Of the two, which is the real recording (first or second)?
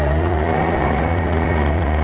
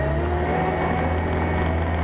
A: second